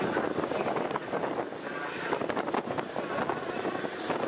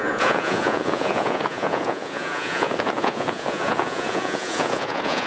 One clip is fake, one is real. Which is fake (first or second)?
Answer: second